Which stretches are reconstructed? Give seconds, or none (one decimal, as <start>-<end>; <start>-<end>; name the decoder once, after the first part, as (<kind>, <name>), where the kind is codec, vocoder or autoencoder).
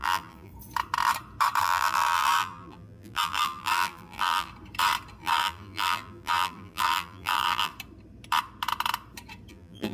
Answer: 0.0-0.5 (vocoder, BigVGAN v2); 1.6-4.5; 5.2-7.7; 9.5-9.9